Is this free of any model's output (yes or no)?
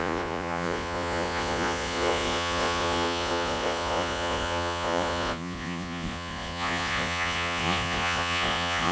no